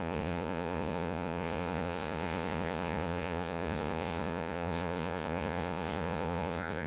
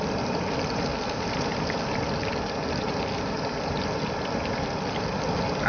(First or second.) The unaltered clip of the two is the second